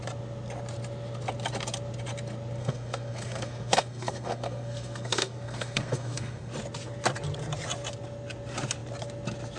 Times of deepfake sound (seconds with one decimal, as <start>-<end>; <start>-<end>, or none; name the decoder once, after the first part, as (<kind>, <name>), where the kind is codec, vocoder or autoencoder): 2.6-6.5 (codec, SNAC)

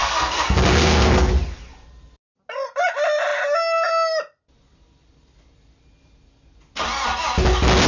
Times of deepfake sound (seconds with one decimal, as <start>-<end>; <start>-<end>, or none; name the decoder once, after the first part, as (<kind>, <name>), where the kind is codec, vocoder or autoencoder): 0.0-1.3 (codec, SNAC)

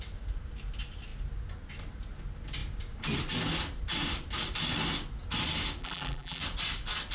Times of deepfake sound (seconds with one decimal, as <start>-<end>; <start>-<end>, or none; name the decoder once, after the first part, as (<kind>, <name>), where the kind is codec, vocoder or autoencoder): 5.8-6.4 (vocoder, BigVGAN v2)